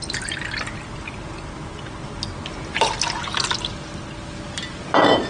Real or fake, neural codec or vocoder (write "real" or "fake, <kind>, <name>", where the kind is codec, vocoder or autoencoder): real